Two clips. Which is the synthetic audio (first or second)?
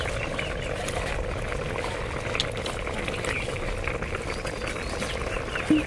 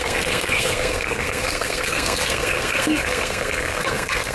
second